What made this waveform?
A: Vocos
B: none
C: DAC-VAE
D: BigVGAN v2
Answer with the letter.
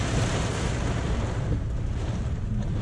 B